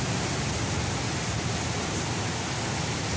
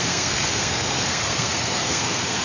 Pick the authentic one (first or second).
first